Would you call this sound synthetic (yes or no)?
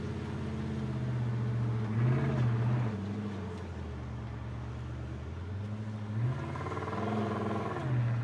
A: no